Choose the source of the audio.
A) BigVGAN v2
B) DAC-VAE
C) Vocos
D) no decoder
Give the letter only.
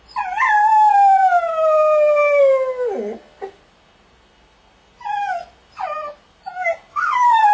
D